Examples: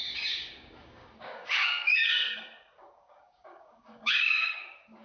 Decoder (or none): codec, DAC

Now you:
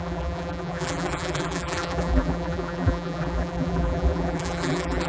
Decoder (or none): vocoder, BigVGAN v2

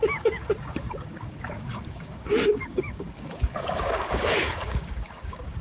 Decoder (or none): codec, DAC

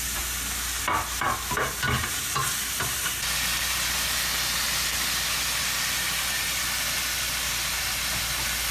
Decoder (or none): none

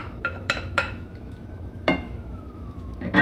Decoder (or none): autoencoder, DAC-VAE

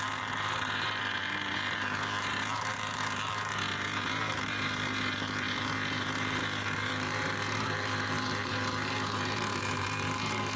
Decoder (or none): vocoder, BigVGAN v2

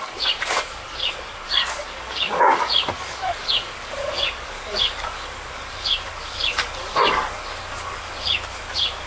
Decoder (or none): codec, DAC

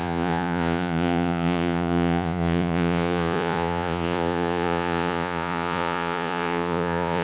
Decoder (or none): vocoder, Vocos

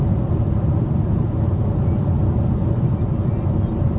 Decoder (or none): none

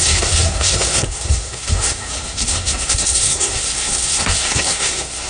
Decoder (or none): codec, SNAC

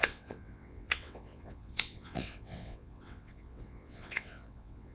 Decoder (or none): vocoder, WaveNeXt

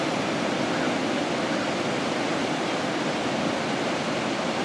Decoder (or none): none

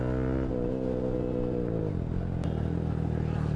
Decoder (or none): none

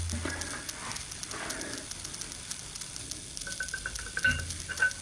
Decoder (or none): none